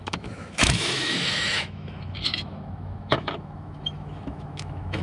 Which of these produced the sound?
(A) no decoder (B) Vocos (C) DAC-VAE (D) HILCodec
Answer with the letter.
C